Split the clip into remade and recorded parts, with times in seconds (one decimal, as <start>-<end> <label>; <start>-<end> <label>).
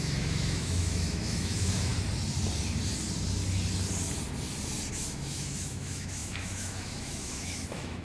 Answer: 0.0-1.9 remade; 1.9-4.9 recorded; 4.9-8.0 remade